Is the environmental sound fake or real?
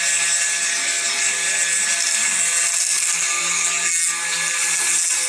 real